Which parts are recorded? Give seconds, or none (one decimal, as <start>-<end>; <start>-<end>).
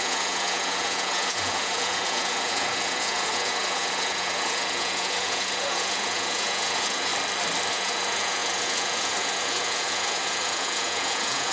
7.1-7.7